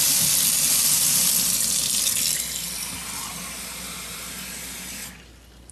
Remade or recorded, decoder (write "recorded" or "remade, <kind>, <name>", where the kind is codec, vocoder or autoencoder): recorded